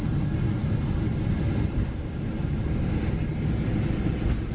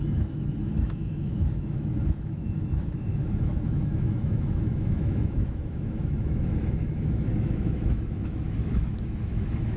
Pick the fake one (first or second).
second